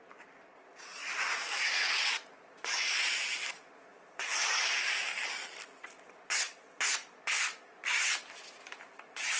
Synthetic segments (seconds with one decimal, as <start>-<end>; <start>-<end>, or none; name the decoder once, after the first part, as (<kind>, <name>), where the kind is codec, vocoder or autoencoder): 0.9-2.8 (vocoder, BigVGAN v2); 3.9-7.8